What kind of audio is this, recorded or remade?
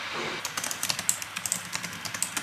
recorded